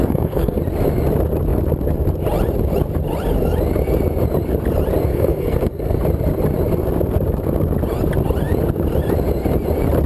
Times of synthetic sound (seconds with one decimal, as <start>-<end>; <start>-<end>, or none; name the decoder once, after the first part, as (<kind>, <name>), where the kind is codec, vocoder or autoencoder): 0.0-0.6 (codec, SNAC); 5.1-6.0